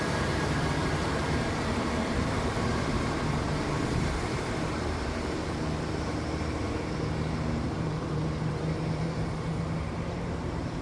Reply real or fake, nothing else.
fake